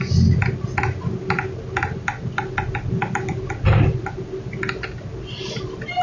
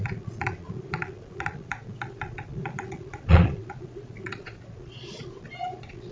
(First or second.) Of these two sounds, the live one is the first